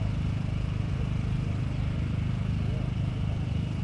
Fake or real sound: real